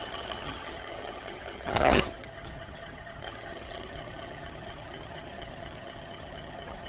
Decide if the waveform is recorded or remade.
remade